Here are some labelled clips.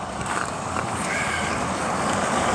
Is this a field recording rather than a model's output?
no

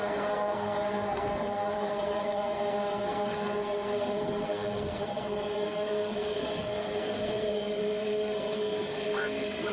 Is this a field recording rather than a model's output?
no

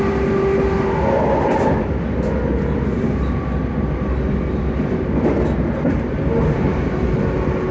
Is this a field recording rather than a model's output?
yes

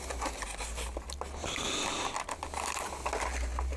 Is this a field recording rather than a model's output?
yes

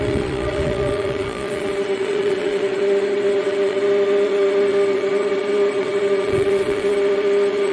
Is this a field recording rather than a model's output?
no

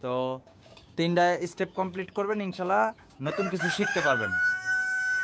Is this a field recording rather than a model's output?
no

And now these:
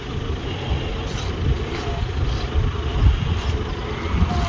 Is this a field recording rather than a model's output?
yes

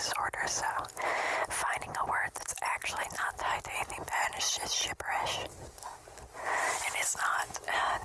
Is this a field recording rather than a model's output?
yes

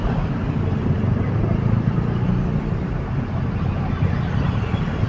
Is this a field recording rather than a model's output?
yes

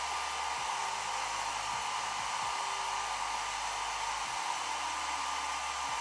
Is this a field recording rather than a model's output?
yes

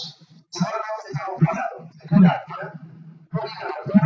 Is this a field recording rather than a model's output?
yes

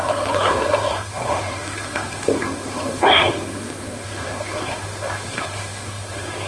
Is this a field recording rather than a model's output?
no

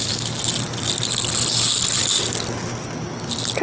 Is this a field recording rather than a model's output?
yes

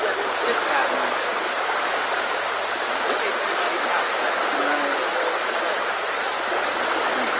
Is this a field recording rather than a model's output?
yes